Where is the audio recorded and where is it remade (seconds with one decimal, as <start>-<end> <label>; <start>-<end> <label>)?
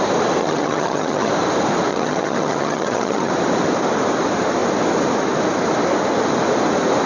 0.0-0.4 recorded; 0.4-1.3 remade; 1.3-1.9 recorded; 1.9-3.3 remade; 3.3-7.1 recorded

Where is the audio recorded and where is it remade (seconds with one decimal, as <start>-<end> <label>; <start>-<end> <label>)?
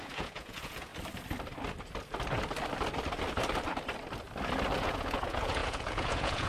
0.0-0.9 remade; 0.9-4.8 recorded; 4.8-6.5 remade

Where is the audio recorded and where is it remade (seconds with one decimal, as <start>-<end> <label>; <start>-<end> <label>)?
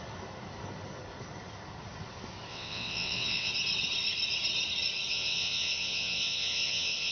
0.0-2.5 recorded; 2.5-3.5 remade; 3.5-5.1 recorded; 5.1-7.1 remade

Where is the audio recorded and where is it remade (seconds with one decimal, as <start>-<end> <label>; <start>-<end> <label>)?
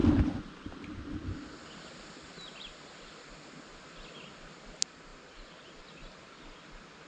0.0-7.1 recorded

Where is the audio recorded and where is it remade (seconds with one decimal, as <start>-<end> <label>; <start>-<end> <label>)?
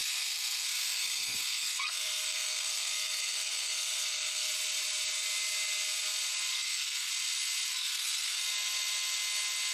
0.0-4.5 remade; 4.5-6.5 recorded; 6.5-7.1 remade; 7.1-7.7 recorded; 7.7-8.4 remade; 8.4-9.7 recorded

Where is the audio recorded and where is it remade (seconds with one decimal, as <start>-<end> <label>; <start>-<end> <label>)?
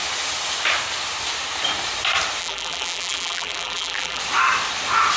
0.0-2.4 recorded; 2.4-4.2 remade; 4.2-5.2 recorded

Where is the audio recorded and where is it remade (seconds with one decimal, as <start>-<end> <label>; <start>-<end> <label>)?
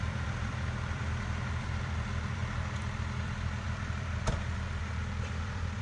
0.0-5.8 remade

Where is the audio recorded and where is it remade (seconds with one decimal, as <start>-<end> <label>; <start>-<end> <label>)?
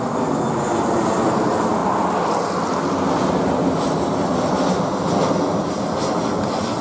0.0-6.8 recorded